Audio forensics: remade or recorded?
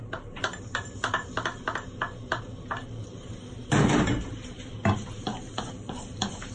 remade